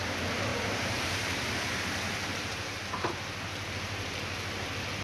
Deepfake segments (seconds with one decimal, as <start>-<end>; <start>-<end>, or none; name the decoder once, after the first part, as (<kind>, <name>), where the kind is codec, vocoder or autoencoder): 0.5-1.6 (vocoder, BigVGAN v2); 2.3-2.8

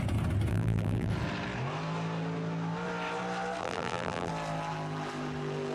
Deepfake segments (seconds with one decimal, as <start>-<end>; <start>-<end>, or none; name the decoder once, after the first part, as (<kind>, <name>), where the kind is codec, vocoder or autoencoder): 0.5-1.1 (vocoder, BigVGAN v2); 3.6-4.3

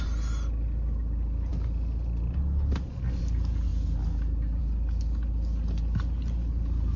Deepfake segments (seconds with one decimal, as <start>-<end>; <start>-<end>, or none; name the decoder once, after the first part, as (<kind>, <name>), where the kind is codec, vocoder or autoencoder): none

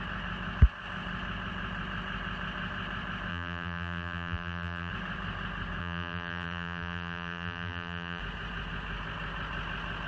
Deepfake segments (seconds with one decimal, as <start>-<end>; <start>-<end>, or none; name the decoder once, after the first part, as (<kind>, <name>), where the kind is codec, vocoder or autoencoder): 3.3-4.9 (vocoder, BigVGAN v2); 5.8-8.2

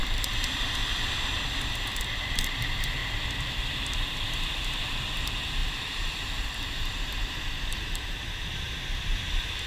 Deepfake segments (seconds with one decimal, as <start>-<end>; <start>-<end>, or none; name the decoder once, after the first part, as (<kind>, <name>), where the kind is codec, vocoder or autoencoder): 0.0-0.8 (vocoder, BigVGAN v2); 2.3-3.0; 4.1-9.7

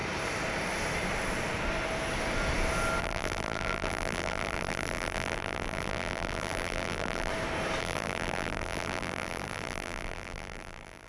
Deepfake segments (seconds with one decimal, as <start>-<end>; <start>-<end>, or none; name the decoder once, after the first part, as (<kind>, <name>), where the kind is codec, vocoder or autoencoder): 3.0-7.3 (vocoder, BigVGAN v2); 7.8-11.1

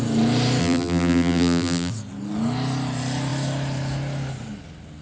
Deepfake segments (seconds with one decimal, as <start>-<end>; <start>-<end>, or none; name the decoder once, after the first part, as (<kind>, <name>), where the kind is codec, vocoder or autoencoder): 0.6-1.9 (vocoder, BigVGAN v2)

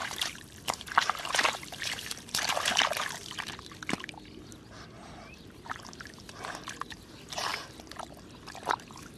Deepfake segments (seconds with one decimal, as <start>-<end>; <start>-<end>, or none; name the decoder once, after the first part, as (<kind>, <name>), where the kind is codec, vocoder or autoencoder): 0.0-3.3 (vocoder, BigVGAN v2); 5.0-6.2